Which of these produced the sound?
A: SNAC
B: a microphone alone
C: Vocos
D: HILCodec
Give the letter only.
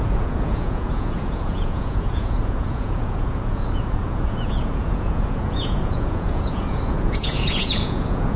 C